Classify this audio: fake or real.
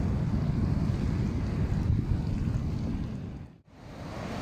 real